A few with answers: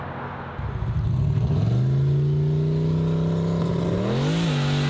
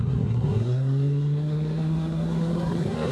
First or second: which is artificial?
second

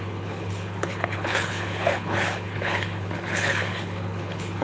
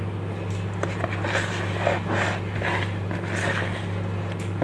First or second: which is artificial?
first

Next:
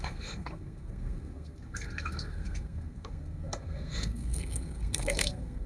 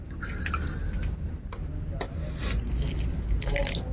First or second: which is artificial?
first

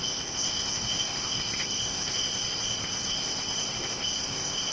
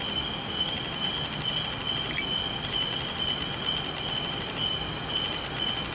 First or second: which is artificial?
first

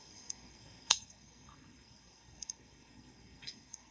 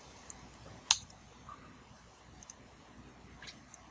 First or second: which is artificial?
first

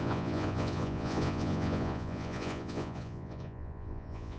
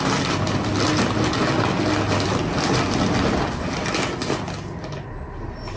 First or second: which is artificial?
first